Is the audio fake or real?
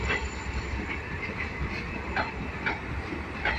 fake